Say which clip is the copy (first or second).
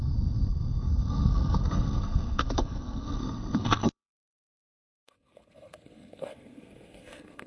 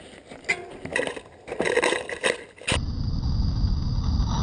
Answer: first